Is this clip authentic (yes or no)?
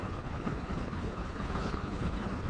no